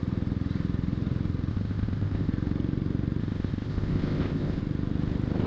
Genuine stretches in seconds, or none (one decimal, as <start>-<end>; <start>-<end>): 0.0-1.5; 2.3-3.2; 4.6-5.5